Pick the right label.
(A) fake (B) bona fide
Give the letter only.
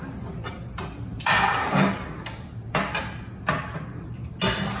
B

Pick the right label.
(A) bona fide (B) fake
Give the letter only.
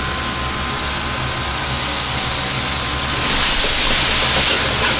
A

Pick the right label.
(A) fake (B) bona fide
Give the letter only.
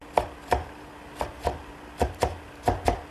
B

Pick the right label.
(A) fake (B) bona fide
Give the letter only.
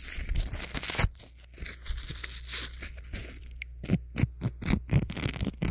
A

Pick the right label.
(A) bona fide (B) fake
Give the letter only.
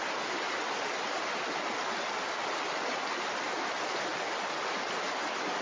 A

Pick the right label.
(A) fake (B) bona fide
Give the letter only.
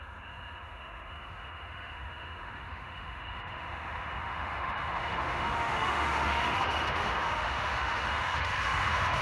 A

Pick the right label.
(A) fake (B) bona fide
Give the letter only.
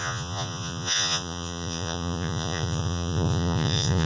A